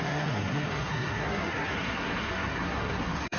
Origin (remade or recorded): remade